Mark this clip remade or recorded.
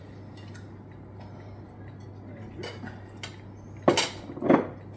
recorded